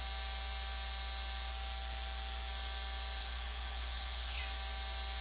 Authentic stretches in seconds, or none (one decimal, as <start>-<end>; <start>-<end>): 0.0-3.2; 4.4-5.2